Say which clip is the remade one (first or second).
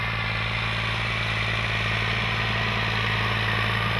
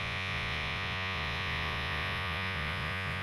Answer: second